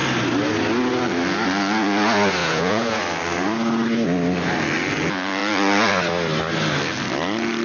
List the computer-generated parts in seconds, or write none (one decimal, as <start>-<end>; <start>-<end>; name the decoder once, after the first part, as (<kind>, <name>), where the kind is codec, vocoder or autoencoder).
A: 2.4-3.0 (vocoder, Vocos)

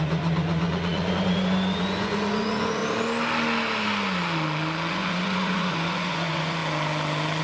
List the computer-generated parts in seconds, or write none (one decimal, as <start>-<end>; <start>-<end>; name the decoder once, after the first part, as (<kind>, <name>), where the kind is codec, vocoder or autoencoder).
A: 0.0-2.8 (vocoder, Vocos); 4.9-6.6

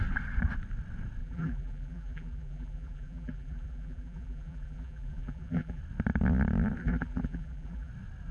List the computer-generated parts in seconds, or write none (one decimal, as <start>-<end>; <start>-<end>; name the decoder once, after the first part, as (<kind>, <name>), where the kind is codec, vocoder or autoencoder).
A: 1.2-5.8 (vocoder, BigVGAN v2); 6.8-7.9

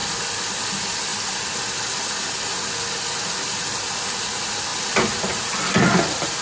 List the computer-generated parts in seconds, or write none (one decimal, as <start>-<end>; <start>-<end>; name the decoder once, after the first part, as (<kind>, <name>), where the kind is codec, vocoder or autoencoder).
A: none